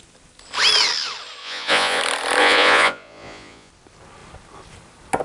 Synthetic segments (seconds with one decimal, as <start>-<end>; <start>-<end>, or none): 1.4-2.0; 2.4-3.7